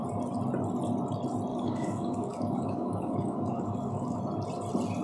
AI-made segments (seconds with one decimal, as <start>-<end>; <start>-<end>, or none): 1.5-4.2